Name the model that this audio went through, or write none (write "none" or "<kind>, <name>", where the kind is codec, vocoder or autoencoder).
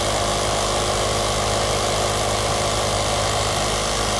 none